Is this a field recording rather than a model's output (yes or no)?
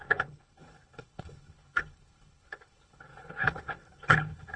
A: no